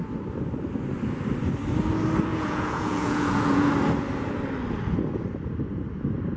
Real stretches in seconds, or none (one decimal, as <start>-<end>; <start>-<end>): 0.0-2.3; 3.7-6.4